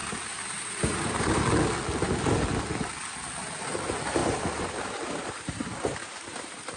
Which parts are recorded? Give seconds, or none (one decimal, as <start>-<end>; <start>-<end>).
1.4-4.2